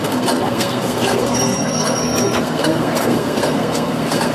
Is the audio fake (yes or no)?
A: yes